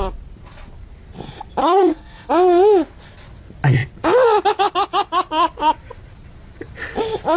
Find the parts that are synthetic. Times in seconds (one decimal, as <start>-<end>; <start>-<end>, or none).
1.6-2.3